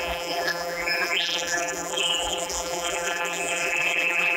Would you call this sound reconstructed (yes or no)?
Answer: yes